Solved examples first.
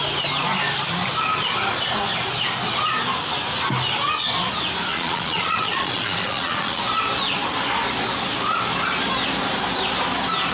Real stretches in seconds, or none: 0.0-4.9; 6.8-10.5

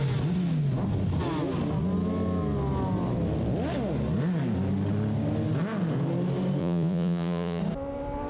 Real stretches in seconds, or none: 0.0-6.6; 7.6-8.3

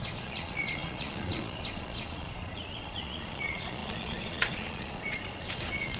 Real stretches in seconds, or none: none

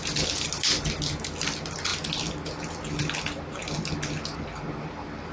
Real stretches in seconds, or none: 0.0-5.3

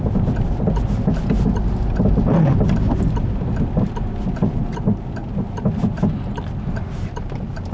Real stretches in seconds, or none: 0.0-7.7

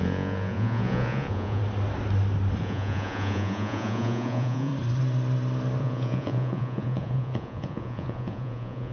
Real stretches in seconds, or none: 1.6-2.6; 4.7-5.8

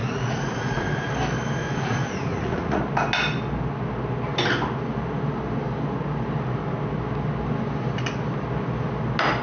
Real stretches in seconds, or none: 1.1-1.6; 2.8-9.4

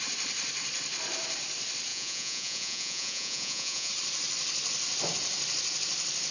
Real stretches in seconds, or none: 0.0-1.9; 3.9-6.3